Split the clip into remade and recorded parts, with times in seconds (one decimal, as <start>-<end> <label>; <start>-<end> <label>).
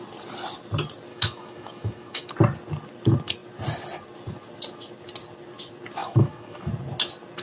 0.0-1.1 recorded; 1.1-2.3 remade; 2.3-6.0 recorded; 6.0-6.7 remade; 6.7-7.4 recorded